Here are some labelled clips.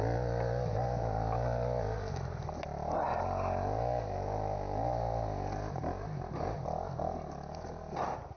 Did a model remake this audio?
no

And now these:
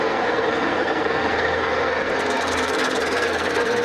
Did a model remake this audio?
yes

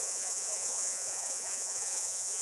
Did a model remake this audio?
yes